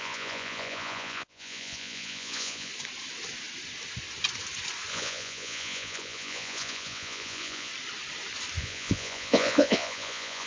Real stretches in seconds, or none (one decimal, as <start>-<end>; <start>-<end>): 2.7-4.9; 7.7-8.6